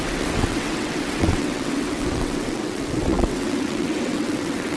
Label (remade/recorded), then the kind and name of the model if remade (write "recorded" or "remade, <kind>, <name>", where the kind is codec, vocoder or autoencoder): remade, vocoder, WaveNeXt